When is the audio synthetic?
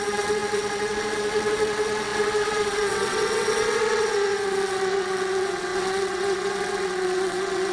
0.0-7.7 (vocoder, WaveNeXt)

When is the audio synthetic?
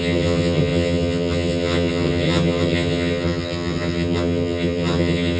0.0-5.4 (vocoder, HiFi-GAN)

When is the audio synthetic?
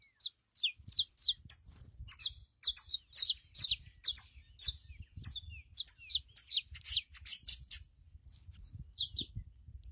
none